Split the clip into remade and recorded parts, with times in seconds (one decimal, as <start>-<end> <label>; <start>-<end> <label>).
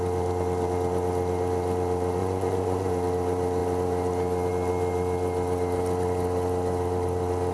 0.0-2.2 recorded; 2.2-2.9 remade; 2.9-7.5 recorded